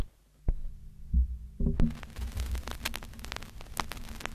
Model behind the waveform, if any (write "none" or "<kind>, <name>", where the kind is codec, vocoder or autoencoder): none